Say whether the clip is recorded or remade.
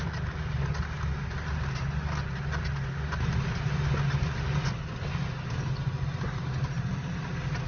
recorded